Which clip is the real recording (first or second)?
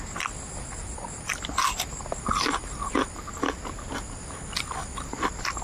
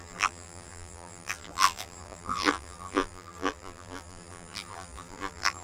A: first